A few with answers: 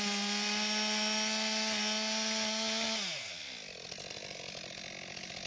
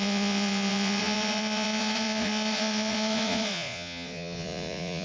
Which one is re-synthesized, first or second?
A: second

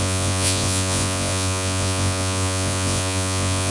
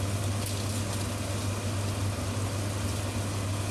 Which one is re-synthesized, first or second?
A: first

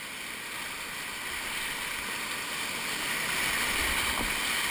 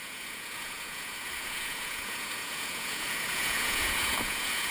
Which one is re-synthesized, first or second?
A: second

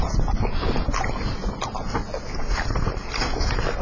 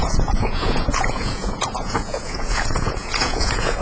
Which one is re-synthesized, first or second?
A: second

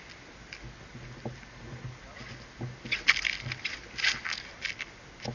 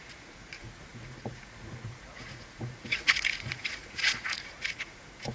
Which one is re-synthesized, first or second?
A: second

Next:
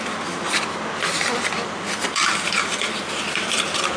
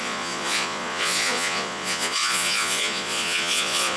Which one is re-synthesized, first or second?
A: second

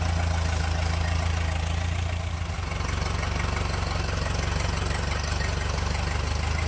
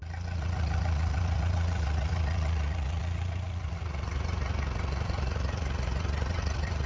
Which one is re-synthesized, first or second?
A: second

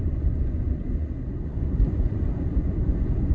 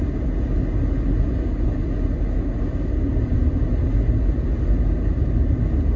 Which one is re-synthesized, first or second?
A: first